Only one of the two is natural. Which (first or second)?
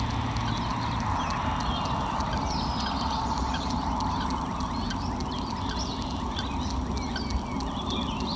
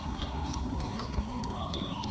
first